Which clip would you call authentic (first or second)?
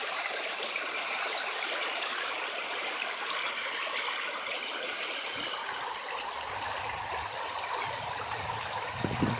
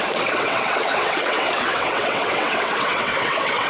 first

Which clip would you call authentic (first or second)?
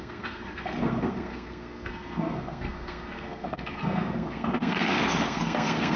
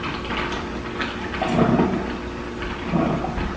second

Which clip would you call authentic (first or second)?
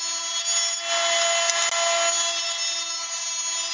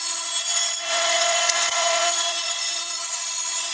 first